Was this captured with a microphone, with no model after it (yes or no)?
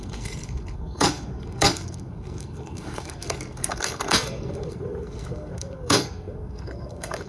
no